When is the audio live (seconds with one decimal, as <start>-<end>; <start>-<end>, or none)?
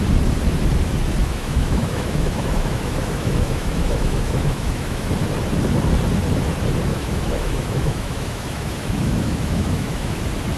0.0-1.2; 5.1-6.9; 10.2-10.6